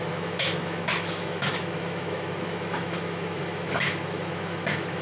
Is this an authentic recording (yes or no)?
no